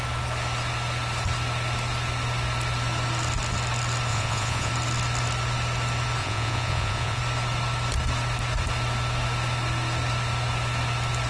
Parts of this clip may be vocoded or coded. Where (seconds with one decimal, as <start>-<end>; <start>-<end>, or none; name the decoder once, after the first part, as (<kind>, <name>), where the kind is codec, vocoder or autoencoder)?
4.1-4.7 (vocoder, Vocos); 6.2-7.2